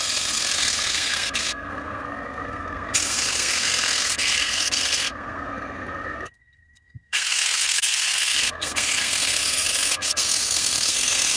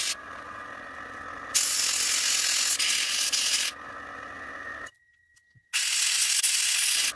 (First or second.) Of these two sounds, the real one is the second